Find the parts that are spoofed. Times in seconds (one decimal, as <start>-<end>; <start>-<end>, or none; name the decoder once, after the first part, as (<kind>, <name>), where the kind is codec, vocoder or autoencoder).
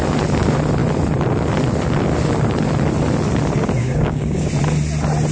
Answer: 3.8-4.5 (codec, DAC)